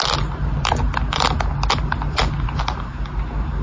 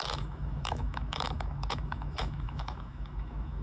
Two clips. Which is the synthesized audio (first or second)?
second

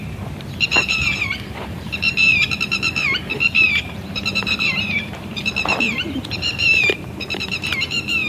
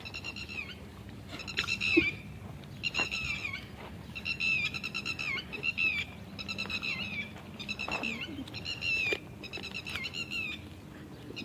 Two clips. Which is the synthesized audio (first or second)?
first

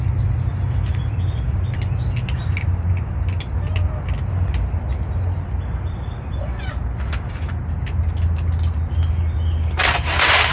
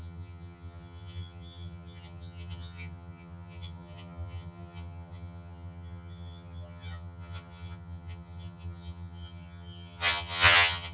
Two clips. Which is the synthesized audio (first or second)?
second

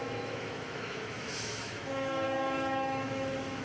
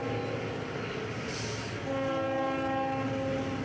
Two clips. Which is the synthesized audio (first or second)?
first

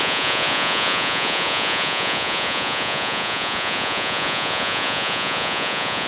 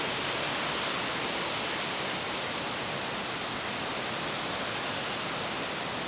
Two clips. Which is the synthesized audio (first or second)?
first